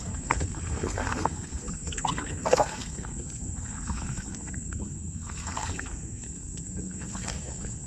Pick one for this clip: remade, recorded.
remade